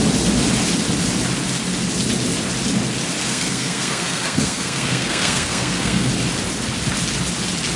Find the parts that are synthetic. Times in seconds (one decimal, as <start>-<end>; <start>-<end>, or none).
3.3-6.1